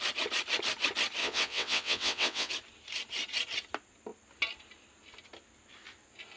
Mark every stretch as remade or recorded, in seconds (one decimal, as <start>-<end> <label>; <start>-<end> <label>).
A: 0.0-1.2 recorded; 1.2-2.5 remade; 2.5-6.4 recorded